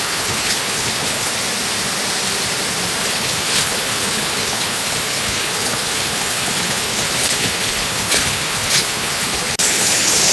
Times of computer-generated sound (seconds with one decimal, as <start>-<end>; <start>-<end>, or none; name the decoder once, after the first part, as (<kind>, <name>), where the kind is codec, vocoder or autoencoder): 0.0-1.3 (codec, HILCodec); 3.0-10.3